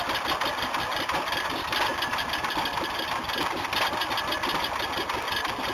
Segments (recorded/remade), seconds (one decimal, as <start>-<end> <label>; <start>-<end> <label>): 0.0-5.7 recorded